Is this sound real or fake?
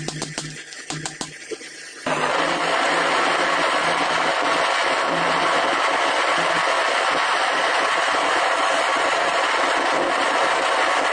real